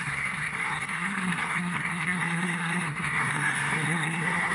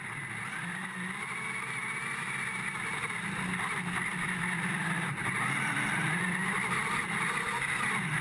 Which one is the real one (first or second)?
second